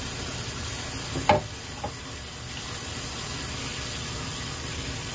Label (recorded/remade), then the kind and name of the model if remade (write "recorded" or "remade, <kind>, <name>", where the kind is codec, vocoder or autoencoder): recorded